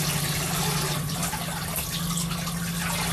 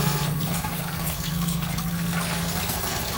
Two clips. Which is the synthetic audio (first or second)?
second